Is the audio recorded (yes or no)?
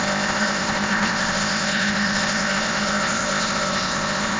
no